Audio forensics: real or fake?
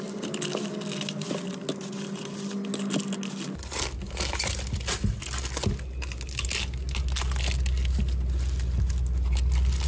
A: real